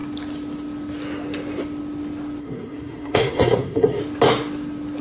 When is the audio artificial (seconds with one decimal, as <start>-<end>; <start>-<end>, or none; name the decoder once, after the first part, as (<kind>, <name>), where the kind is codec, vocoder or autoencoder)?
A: 2.4-4.0 (codec, SNAC)